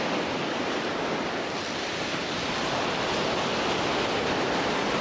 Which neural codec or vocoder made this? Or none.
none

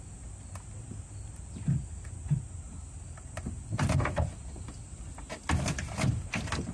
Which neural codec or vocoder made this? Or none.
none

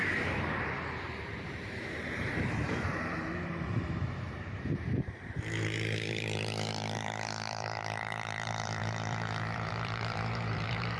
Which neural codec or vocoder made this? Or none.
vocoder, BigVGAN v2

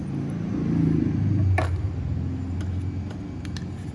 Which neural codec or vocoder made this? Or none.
none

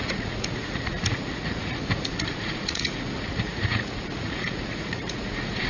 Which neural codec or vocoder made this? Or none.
vocoder, Vocos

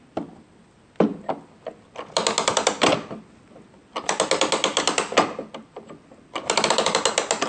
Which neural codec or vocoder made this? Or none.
none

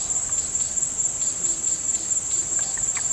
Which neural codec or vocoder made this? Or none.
none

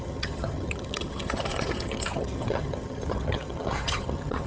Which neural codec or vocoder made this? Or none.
vocoder, HiFi-GAN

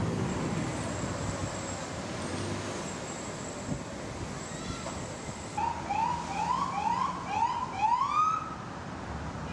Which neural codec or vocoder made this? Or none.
none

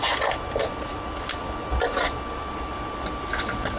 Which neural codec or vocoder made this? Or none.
none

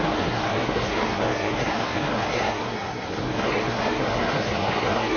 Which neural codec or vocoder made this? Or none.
codec, SNAC